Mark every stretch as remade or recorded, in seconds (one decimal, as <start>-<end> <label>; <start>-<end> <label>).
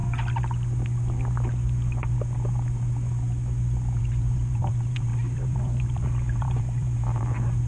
0.0-4.0 recorded; 4.0-7.7 remade